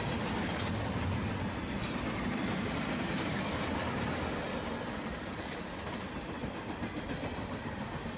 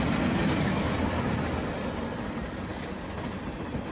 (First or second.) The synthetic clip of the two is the first